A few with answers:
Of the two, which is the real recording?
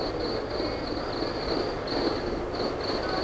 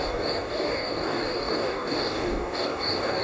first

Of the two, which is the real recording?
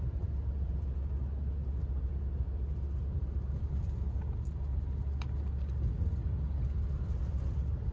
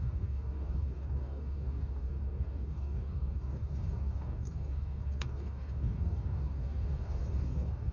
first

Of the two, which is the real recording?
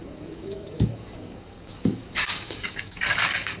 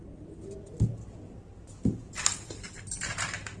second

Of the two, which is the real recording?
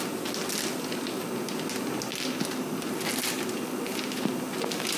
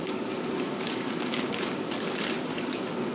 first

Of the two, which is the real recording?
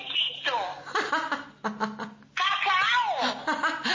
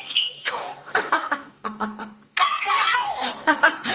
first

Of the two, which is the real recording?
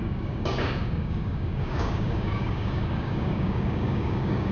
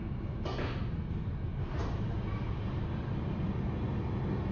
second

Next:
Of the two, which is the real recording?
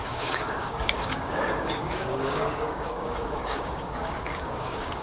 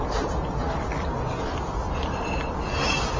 second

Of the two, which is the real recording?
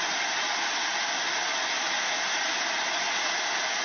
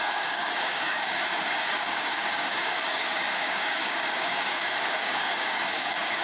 first